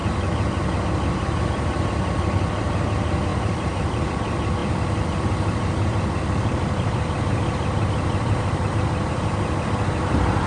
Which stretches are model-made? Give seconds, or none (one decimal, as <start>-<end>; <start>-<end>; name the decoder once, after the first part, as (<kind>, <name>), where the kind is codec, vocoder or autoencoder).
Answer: 0.8-10.5 (vocoder, BigVGAN v2)